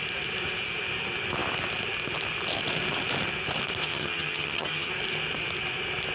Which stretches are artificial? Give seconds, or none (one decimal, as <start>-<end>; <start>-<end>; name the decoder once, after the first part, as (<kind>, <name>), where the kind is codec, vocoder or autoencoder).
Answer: 3.8-4.9 (vocoder, HiFi-GAN)